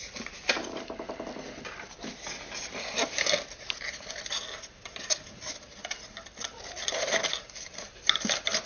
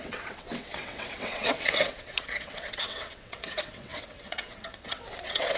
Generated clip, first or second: second